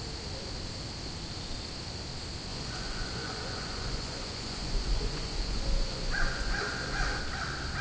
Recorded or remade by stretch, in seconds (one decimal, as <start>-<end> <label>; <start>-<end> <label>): 0.0-2.5 recorded; 2.5-7.2 remade; 7.2-7.8 recorded